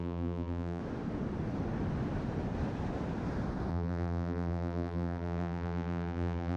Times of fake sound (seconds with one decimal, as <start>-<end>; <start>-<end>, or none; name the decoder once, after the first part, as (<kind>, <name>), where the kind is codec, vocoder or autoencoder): 0.0-0.8 (vocoder, BigVGAN v2); 3.7-6.6